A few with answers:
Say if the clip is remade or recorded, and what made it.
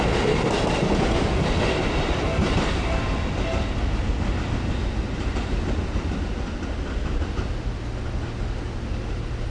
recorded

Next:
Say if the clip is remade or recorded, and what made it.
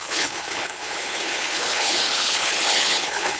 remade, codec, HILCodec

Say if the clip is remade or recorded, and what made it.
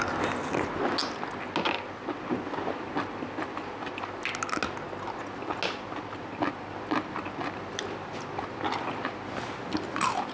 recorded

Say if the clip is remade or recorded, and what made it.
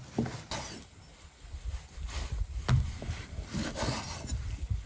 recorded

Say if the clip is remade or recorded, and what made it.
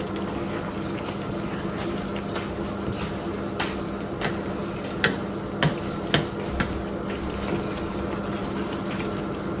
recorded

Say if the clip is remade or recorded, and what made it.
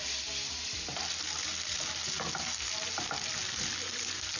recorded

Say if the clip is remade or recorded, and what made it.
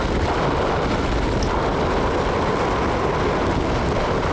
recorded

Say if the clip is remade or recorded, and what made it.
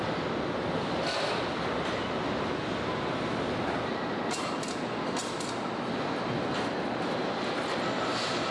recorded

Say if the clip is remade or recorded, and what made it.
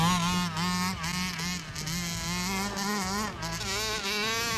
recorded